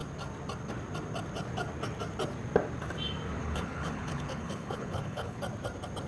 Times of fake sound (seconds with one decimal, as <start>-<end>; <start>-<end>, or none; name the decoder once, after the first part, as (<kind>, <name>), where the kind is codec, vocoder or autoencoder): 3.4-5.4 (codec, HILCodec)